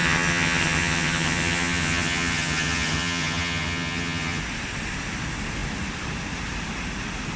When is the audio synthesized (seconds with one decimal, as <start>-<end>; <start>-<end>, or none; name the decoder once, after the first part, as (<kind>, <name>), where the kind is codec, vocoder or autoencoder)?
0.0-4.4 (vocoder, HiFi-GAN)